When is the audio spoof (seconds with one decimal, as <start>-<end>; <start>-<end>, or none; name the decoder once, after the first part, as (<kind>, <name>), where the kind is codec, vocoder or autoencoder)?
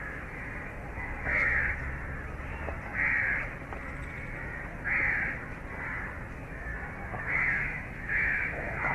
0.0-1.6 (autoencoder, DAC-VAE); 6.3-6.7; 7.2-8.9